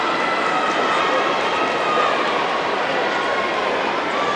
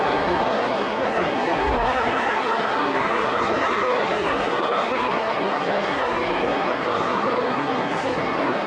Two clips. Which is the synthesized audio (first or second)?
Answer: second